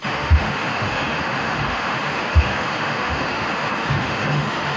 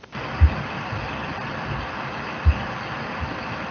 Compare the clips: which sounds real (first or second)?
second